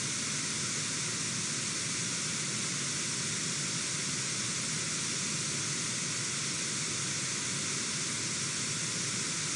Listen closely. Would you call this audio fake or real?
real